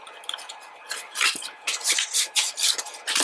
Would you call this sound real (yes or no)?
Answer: no